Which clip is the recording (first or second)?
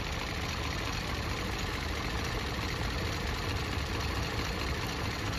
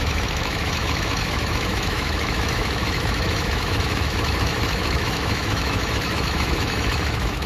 first